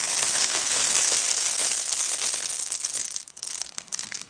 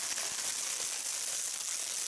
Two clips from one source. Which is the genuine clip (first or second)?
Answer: second